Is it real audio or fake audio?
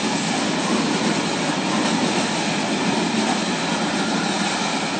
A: real